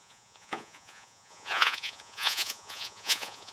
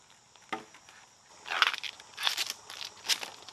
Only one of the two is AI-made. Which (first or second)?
first